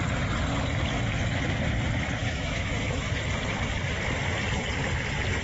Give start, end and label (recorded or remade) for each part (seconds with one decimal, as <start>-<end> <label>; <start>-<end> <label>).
0.0-2.2 recorded; 2.2-3.1 remade; 3.1-5.4 recorded

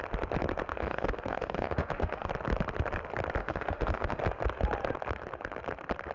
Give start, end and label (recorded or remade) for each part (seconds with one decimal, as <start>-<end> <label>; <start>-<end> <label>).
0.0-0.7 recorded; 0.7-2.3 remade; 2.3-3.4 recorded; 3.4-4.2 remade; 4.2-6.1 recorded

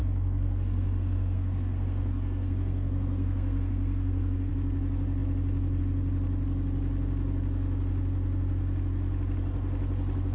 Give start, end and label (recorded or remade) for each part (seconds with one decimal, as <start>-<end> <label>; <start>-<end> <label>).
0.0-4.5 remade; 4.5-10.3 recorded

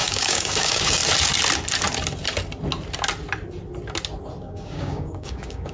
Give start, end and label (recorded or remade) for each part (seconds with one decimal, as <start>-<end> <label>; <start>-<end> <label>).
0.0-1.0 remade; 1.0-4.4 recorded; 4.4-5.7 remade

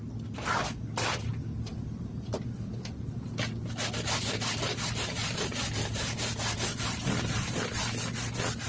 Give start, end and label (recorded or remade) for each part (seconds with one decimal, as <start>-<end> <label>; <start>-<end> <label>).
0.0-8.7 recorded

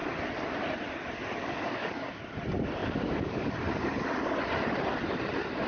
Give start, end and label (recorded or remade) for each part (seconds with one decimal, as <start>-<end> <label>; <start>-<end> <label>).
0.0-1.4 recorded; 1.4-2.2 remade; 2.2-2.8 recorded; 2.8-3.5 remade; 3.5-5.7 recorded